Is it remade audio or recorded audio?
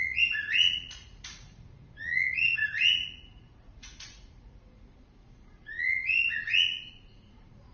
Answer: remade